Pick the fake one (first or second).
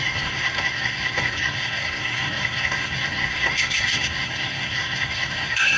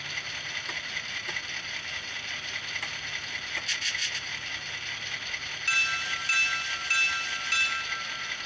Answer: first